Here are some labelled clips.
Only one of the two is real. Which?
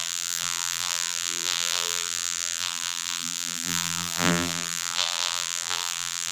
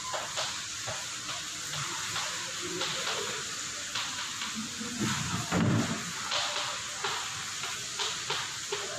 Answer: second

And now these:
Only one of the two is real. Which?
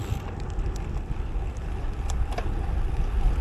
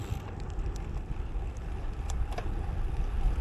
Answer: first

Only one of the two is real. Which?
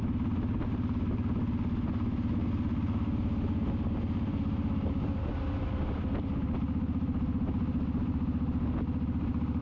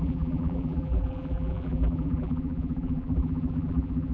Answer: first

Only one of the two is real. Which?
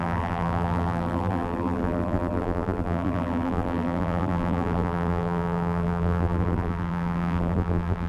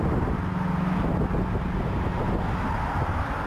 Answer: second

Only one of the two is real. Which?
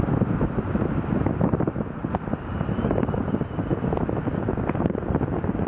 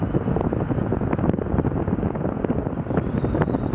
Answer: second